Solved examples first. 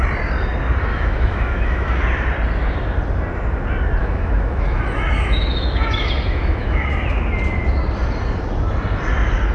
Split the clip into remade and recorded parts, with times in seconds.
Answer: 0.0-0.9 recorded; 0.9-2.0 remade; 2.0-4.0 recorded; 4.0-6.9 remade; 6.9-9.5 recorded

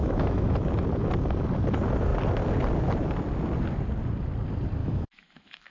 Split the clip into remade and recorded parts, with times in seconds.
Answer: 0.0-0.7 remade; 0.7-4.8 recorded; 4.8-5.7 remade

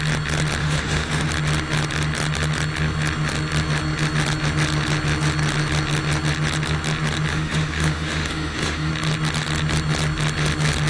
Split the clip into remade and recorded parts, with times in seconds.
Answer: 0.0-0.6 recorded; 0.6-1.3 remade; 1.3-7.3 recorded; 7.3-8.9 remade; 8.9-10.9 recorded

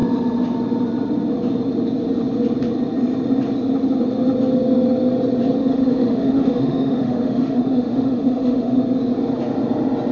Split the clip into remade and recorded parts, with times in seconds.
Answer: 0.0-5.6 recorded; 5.6-8.8 remade; 8.8-10.1 recorded

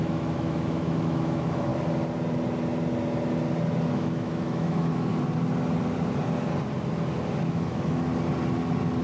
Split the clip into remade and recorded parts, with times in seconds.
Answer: 0.0-1.7 remade; 1.7-3.9 recorded; 3.9-5.1 remade; 5.1-7.4 recorded; 7.4-8.1 remade; 8.1-9.0 recorded

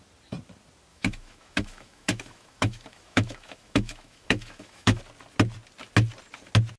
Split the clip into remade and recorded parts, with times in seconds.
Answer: 0.0-0.9 recorded; 0.9-5.0 remade; 5.0-6.8 recorded

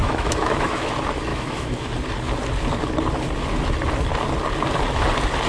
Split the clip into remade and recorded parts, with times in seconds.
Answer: 0.0-0.9 remade; 0.9-1.3 recorded; 1.3-1.9 remade; 1.9-5.5 recorded

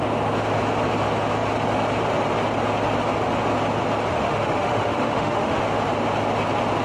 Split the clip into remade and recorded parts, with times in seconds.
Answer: 0.0-4.1 recorded; 4.1-5.6 remade; 5.6-6.8 recorded